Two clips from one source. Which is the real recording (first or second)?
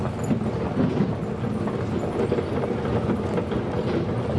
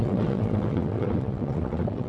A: first